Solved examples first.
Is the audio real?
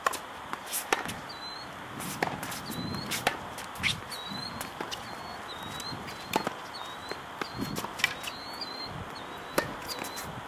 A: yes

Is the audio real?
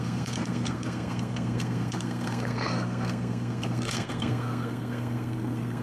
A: no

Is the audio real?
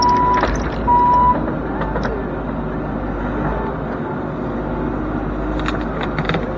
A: yes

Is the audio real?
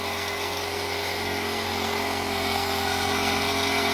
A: no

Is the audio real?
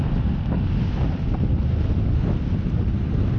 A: yes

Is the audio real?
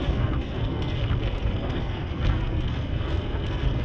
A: no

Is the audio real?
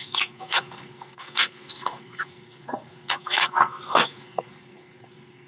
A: no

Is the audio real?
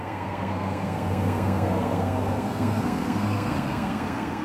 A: no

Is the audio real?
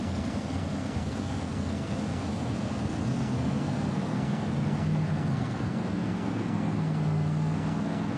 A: no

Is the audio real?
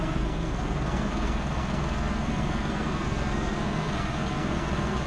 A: no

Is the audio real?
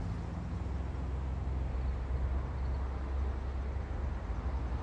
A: yes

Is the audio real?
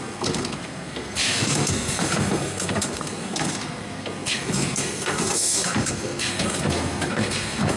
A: no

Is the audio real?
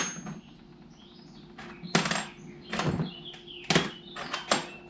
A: yes